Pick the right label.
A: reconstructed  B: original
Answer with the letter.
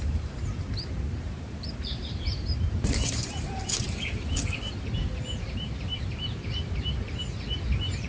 A